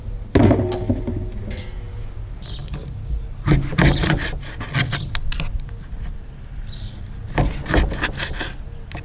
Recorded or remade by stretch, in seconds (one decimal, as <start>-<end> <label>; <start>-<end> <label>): 0.0-2.6 recorded; 2.6-4.5 remade; 4.5-9.0 recorded